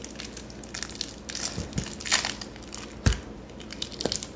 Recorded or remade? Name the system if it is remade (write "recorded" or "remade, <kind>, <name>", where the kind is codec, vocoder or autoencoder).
recorded